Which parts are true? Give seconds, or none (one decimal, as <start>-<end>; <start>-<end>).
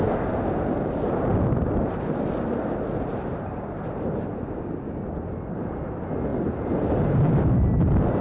0.0-8.2